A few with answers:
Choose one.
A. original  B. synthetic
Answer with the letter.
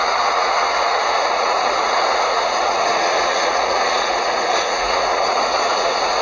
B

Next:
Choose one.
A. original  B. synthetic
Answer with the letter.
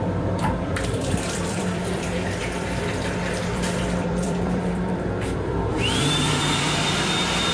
B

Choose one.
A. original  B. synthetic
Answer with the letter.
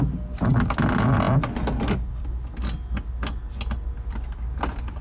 A